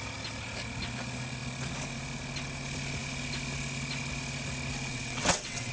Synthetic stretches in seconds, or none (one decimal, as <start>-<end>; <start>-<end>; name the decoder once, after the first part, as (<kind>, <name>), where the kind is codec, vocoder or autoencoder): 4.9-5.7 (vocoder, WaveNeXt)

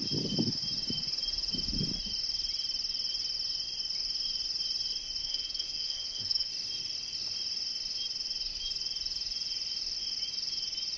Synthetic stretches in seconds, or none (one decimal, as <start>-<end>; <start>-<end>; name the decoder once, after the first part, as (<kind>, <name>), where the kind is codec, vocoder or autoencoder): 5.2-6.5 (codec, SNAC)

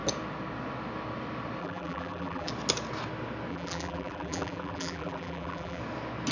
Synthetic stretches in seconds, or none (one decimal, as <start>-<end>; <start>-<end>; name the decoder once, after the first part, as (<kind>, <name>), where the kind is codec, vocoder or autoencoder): 1.6-2.5 (vocoder, BigVGAN v2); 3.5-5.8